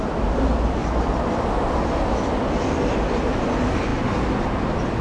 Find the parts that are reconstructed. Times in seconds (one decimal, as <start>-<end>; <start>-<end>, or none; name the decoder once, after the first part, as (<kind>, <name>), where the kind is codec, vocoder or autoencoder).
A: none